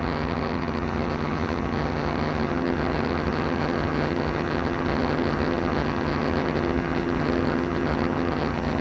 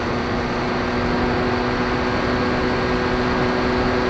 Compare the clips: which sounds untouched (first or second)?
second